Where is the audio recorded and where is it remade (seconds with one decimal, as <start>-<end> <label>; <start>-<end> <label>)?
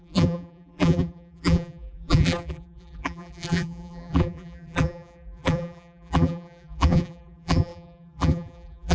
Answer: 0.0-8.9 remade